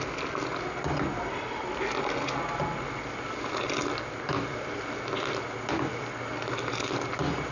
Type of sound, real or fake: real